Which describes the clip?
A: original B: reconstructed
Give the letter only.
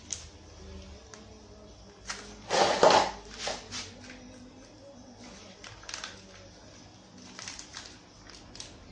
A